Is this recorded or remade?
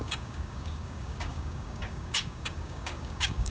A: remade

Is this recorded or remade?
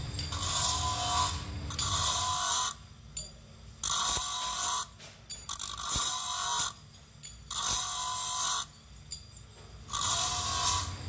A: recorded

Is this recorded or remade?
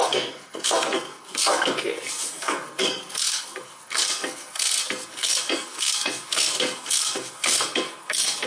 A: remade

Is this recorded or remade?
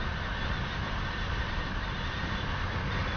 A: recorded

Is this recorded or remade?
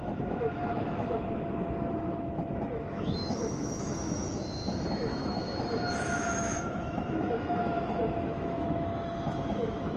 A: remade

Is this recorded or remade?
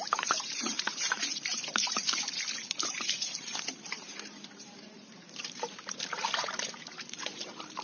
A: remade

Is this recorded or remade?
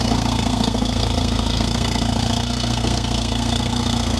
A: remade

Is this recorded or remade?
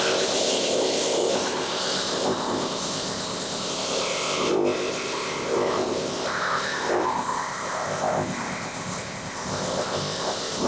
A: remade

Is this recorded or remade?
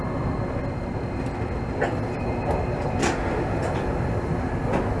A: recorded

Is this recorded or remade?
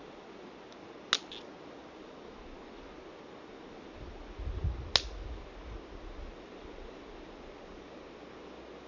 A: recorded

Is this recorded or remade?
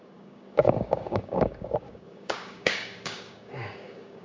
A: remade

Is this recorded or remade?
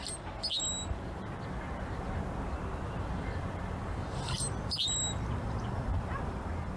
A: recorded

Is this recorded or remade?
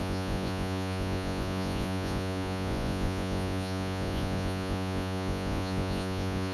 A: remade